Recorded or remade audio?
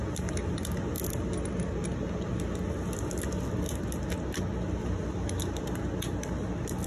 recorded